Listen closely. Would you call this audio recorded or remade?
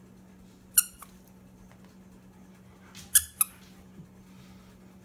recorded